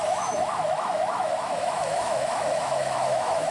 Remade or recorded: remade